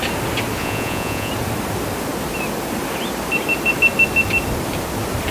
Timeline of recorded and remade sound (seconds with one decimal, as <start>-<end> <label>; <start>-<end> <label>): 0.0-0.6 recorded; 0.6-1.3 remade; 1.3-5.3 recorded